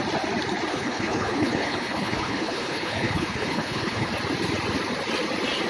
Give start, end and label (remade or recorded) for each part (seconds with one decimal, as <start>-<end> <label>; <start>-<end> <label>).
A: 0.0-0.7 recorded; 0.7-4.1 remade; 4.1-5.7 recorded